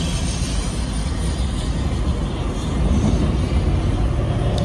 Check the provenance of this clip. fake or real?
real